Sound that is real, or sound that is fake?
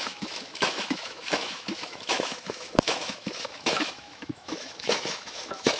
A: fake